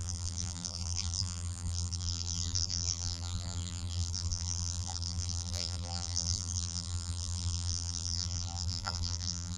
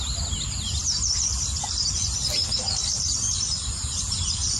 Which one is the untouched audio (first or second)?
second